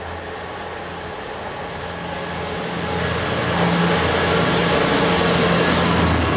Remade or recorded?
recorded